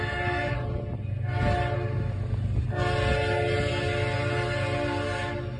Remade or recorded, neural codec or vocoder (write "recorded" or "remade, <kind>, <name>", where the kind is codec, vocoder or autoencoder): recorded